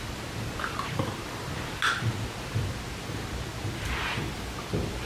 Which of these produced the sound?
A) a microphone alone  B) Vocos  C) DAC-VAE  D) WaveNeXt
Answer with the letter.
A